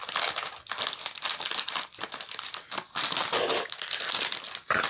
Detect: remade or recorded recorded